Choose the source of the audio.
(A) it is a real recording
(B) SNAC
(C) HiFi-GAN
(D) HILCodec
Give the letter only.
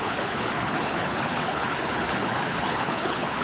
D